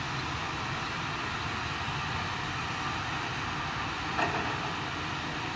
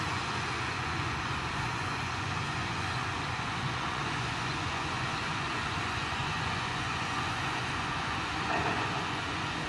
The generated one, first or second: second